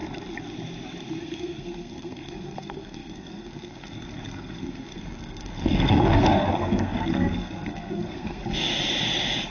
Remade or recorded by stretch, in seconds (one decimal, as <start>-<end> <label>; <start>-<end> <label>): 0.0-1.2 recorded; 1.2-8.4 remade; 8.4-9.5 recorded